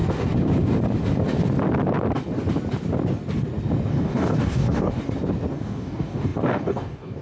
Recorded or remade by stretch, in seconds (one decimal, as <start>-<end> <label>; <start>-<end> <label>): 0.0-3.9 recorded; 3.9-5.0 remade; 5.0-5.5 recorded; 5.5-7.2 remade